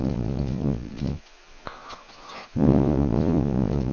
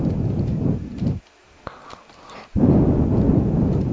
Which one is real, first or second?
second